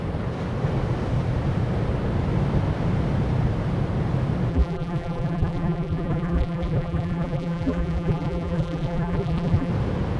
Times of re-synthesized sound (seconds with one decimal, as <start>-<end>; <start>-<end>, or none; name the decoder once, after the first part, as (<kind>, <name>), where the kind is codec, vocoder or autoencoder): 4.5-9.7 (vocoder, BigVGAN v2)